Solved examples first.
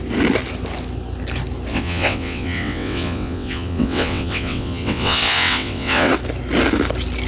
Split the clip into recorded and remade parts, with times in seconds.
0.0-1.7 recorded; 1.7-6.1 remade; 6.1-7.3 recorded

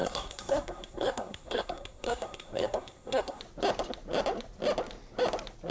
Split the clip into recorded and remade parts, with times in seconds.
0.0-3.4 remade; 3.4-5.7 recorded

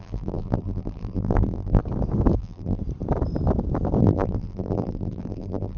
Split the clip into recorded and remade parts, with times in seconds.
0.0-1.8 remade; 1.8-2.4 recorded; 2.4-2.8 remade; 2.8-4.0 recorded; 4.0-5.8 remade

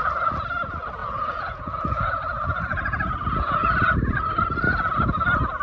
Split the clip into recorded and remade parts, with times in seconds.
0.0-1.0 recorded; 1.0-4.4 remade; 4.4-5.6 recorded

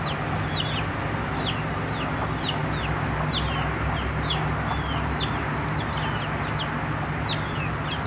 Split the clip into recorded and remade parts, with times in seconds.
0.0-2.6 recorded; 2.6-3.3 remade; 3.3-8.1 recorded

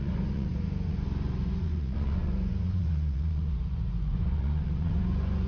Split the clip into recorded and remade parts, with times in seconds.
0.0-5.5 remade

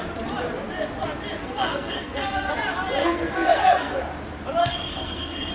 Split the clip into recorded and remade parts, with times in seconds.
0.0-1.4 recorded; 1.4-2.5 remade; 2.5-3.0 recorded; 3.0-4.0 remade; 4.0-4.6 recorded; 4.6-5.5 remade